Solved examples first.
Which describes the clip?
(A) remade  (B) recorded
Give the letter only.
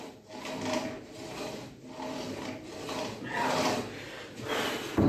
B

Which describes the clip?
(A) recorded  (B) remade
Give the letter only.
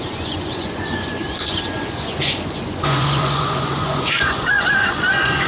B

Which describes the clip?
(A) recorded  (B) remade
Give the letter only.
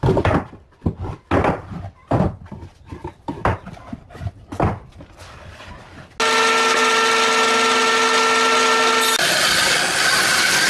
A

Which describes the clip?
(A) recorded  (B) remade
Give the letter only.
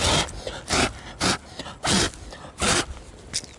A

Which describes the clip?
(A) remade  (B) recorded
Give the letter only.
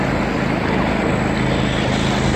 B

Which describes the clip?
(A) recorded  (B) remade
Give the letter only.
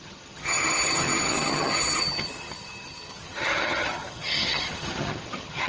B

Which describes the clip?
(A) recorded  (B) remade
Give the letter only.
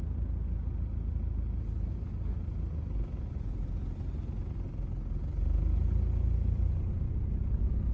A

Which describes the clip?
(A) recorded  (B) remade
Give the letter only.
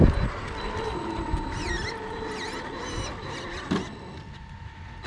A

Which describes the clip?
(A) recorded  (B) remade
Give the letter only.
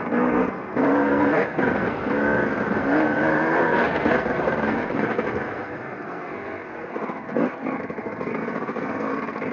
B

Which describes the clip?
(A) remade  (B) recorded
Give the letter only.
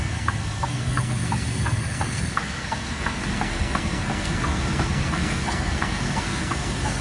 A